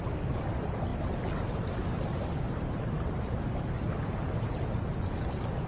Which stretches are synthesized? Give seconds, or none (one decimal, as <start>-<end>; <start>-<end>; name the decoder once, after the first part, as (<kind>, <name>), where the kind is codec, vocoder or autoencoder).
none